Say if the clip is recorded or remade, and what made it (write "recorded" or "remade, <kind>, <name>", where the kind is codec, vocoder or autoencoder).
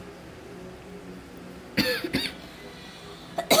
recorded